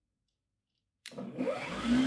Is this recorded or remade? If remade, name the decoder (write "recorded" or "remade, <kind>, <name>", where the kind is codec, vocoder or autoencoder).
remade, codec, DAC